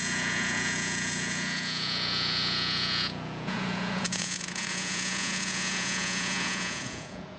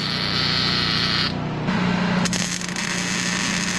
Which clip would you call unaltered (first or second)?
second